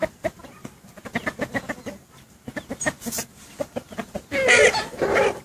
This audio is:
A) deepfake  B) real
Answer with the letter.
B